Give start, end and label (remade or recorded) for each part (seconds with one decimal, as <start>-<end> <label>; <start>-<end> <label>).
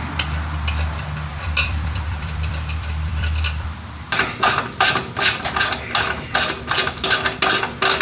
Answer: 0.0-1.3 recorded; 1.3-5.5 remade; 5.5-8.0 recorded